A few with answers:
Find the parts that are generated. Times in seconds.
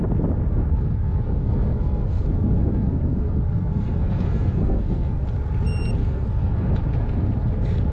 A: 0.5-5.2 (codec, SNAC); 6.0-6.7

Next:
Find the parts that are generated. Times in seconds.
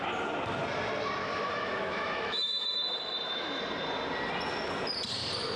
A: 1.2-3.6 (autoencoder, DAC-VAE)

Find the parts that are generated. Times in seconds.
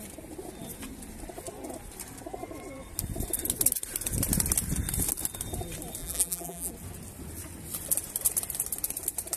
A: 6.0-6.7 (vocoder, BigVGAN v2)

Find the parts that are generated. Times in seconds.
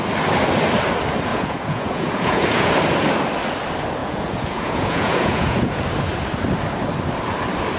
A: 1.3-2.7 (vocoder, Vocos); 4.0-5.8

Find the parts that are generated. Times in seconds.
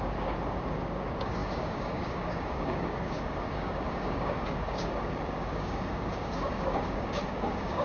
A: 0.0-7.8 (codec, DAC)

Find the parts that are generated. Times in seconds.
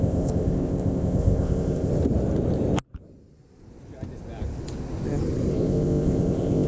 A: 0.0-1.9 (codec, ZipCodec); 5.5-6.7